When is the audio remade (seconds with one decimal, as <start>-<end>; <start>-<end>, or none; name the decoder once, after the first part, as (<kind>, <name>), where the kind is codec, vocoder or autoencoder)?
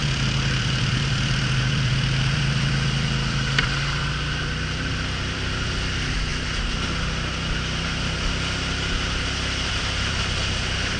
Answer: 0.0-6.3 (vocoder, BigVGAN v2); 9.7-11.0